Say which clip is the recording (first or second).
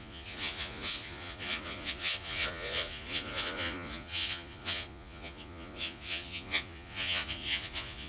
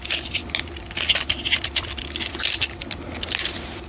second